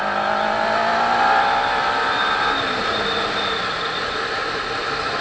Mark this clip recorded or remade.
recorded